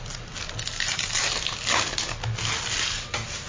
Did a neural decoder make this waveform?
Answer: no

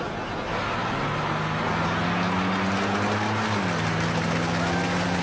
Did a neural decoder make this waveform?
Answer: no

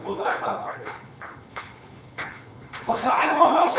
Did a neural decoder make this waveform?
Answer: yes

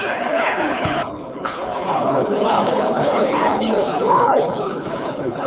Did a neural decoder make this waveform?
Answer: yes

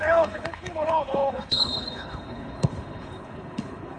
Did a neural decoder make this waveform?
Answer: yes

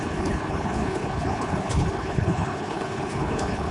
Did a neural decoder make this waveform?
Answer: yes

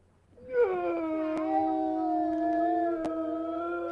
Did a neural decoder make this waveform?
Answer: no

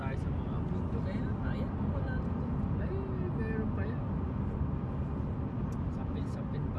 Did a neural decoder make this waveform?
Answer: no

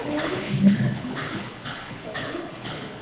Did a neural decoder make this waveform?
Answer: yes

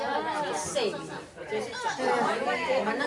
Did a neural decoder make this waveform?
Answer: no